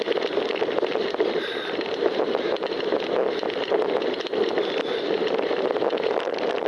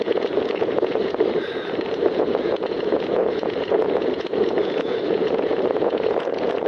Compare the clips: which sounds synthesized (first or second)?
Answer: second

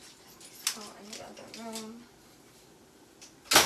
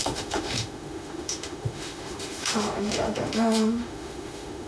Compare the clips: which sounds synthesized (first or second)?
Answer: second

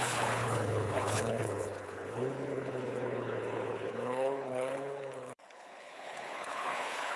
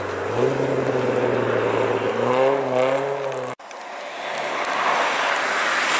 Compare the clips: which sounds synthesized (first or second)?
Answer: first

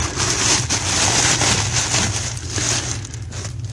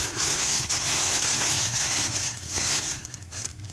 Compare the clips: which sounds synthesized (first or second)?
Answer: second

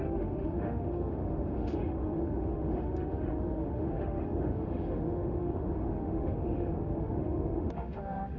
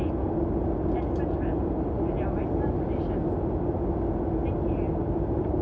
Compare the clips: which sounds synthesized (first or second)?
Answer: first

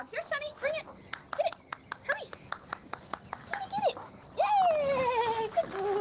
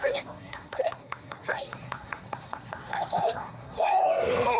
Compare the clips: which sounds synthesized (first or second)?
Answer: second